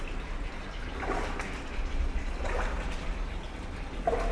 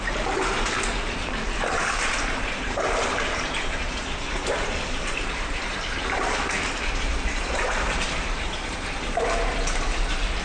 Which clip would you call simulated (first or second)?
second